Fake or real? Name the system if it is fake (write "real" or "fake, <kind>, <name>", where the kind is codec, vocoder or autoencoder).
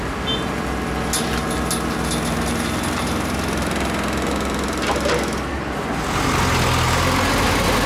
real